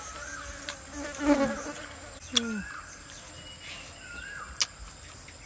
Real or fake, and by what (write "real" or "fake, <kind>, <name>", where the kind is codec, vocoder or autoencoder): real